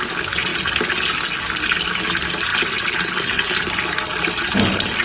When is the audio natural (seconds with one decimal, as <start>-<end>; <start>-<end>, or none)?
0.0-5.0